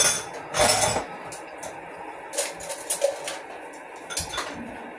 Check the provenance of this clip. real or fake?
real